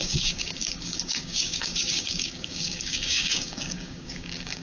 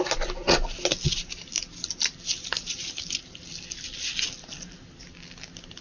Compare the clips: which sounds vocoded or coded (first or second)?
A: first